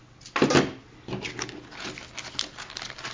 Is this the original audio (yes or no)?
yes